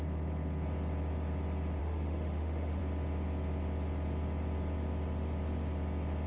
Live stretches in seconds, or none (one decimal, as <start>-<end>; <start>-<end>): 0.0-1.8; 2.8-6.3